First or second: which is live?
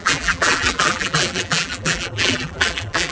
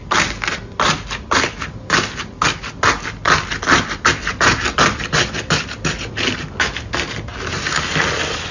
second